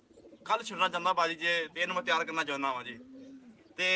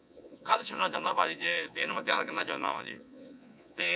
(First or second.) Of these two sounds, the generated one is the second